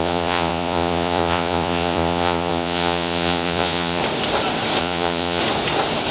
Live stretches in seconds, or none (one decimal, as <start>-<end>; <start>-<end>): 4.0-4.8; 5.4-6.1